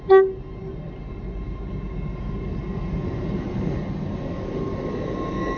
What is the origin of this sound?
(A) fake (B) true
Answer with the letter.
B